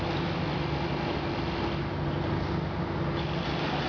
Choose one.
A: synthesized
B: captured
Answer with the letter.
B